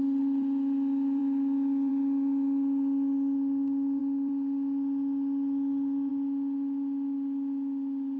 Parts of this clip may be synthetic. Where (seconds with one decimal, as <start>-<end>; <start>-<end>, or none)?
none